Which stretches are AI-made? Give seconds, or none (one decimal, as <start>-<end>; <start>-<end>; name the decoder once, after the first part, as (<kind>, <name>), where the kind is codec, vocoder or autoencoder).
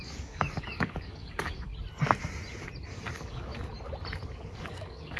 0.0-1.7 (codec, DAC); 2.9-3.5; 4.3-5.2